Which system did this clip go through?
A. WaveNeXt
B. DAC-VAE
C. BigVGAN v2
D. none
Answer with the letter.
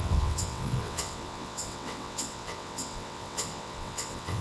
A